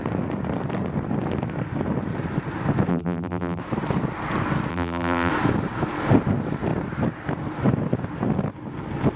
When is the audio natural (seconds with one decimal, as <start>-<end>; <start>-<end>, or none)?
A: 0.0-2.9; 3.6-4.7; 5.3-9.2